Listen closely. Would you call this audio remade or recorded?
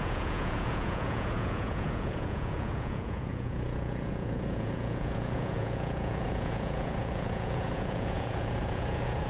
remade